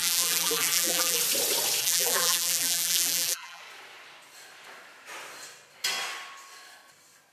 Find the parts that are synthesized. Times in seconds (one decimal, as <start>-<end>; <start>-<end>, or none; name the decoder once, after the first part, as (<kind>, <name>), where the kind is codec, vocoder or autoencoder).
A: 0.0-1.2 (vocoder, BigVGAN v2); 1.8-3.6